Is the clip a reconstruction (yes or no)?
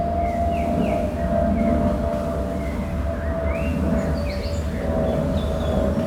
no